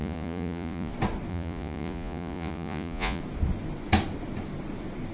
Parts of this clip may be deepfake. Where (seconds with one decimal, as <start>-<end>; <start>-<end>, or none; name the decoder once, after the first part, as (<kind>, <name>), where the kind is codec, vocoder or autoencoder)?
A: 0.0-0.9 (vocoder, Vocos); 1.3-3.2